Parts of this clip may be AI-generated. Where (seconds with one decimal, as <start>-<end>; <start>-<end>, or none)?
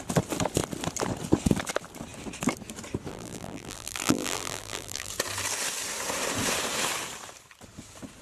3.1-5.1